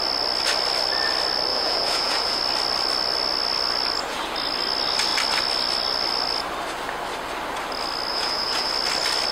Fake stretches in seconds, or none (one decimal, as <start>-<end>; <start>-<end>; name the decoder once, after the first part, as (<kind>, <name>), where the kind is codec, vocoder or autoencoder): 1.5-2.4 (vocoder, Vocos); 8.1-8.7